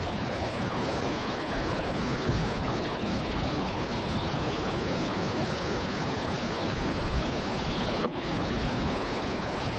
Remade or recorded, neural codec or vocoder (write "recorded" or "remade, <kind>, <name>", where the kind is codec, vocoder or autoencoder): remade, codec, HILCodec